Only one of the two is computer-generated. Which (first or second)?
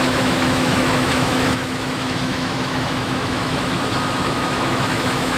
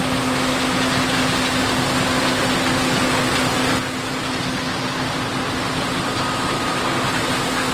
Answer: first